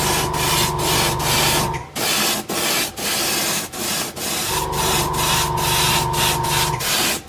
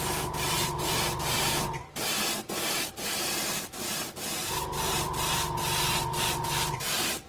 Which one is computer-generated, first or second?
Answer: second